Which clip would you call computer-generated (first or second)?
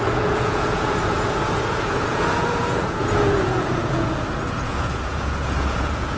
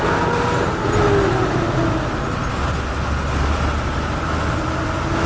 first